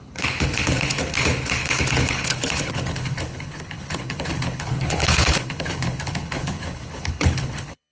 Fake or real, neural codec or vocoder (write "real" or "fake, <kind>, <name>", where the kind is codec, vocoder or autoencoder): fake, codec, HILCodec